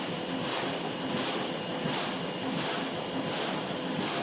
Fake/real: real